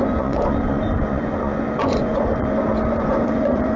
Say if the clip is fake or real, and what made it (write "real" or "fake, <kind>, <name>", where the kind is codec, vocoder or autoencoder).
fake, vocoder, Vocos